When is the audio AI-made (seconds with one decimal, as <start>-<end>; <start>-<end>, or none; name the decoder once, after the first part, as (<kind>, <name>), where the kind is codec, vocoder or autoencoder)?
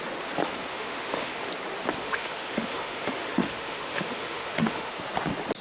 0.7-1.5 (autoencoder, DAC-VAE); 2.0-4.9